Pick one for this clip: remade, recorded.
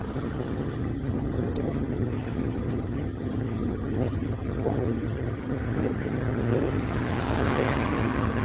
remade